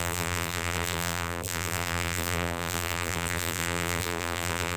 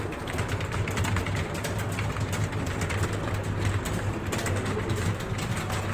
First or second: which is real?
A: second